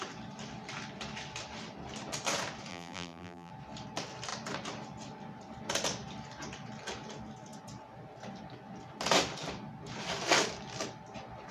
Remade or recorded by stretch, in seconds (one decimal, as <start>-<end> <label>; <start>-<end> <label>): 0.0-2.7 recorded; 2.7-3.5 remade; 3.5-11.5 recorded